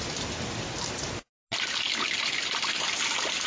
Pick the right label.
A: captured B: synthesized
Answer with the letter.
A